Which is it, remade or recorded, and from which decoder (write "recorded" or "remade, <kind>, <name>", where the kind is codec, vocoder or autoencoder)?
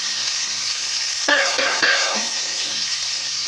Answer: remade, codec, SNAC